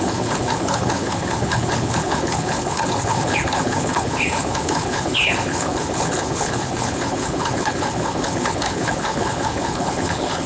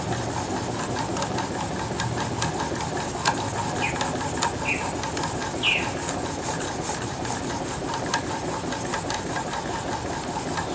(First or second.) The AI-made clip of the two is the first